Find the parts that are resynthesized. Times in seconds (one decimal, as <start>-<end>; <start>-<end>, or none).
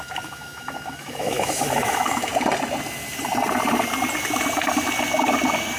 0.0-2.3